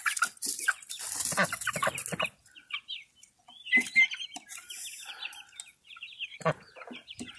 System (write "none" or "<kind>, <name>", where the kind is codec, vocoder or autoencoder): none